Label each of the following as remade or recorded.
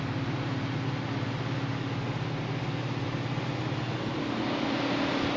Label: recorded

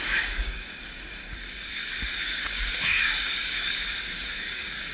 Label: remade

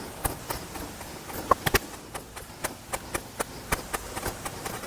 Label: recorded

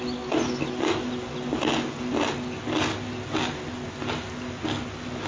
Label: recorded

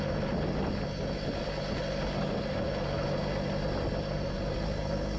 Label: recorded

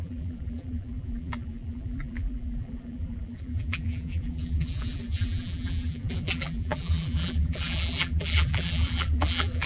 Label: remade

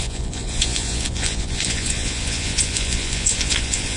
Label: remade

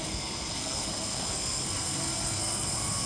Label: remade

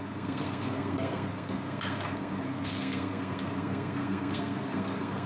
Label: remade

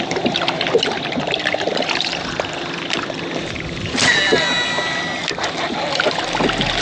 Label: recorded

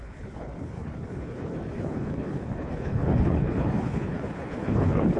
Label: remade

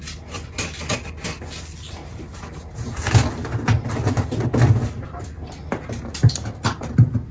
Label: recorded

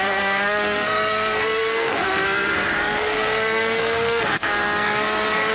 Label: remade